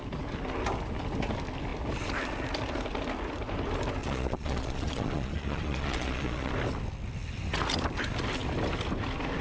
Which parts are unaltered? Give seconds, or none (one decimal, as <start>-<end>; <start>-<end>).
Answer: 0.0-4.0; 6.5-9.4